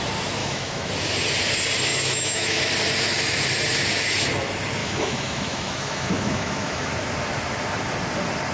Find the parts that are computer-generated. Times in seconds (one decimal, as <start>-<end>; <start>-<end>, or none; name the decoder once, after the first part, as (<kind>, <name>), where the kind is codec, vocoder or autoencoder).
0.4-0.9 (autoencoder, DAC-VAE); 1.9-2.6; 4.8-6.9